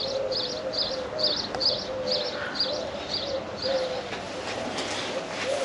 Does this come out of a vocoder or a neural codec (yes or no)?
no